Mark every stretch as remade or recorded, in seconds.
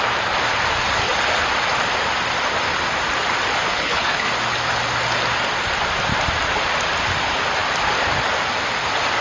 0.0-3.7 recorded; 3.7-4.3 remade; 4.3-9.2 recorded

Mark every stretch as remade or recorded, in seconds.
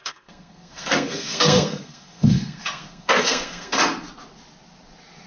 0.0-3.8 remade; 3.8-5.3 recorded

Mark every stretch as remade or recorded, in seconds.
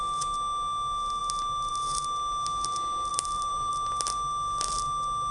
0.0-3.1 recorded; 3.1-3.7 remade; 3.7-5.3 recorded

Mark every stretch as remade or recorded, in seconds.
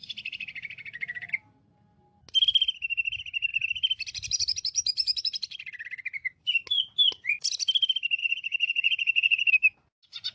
0.0-1.3 remade; 1.3-8.2 recorded; 8.2-9.5 remade; 9.5-10.3 recorded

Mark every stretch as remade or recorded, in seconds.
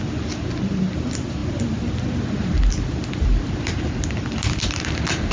0.0-5.3 recorded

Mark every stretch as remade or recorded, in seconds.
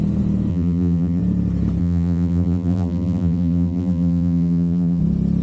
0.0-0.5 recorded; 0.5-1.2 remade; 1.2-1.8 recorded; 1.8-5.0 remade; 5.0-5.4 recorded